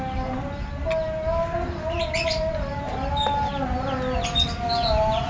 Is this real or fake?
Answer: real